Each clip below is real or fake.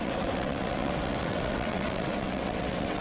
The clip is fake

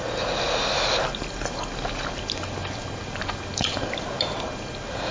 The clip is real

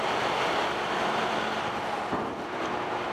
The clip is real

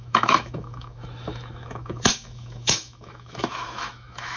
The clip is fake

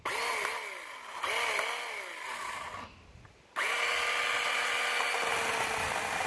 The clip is real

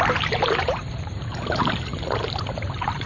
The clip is fake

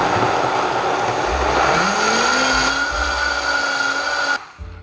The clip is real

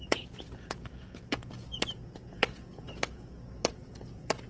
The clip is fake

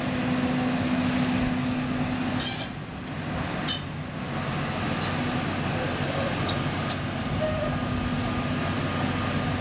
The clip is real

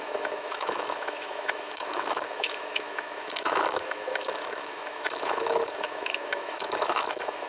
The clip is fake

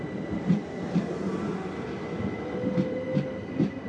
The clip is real